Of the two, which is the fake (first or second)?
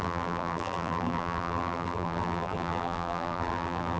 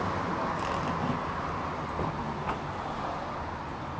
first